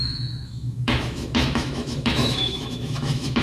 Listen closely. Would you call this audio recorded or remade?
remade